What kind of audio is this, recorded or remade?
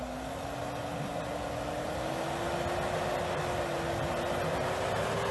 recorded